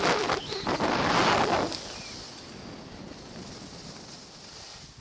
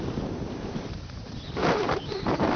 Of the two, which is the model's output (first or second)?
second